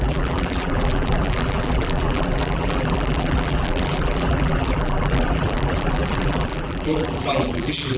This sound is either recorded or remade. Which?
remade